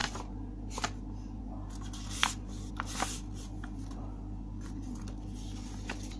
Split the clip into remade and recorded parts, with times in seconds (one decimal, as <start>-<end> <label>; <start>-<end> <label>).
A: 0.0-6.2 recorded